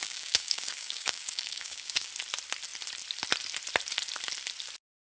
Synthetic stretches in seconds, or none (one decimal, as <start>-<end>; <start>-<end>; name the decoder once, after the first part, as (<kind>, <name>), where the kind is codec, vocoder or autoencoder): 0.0-2.1 (codec, DAC)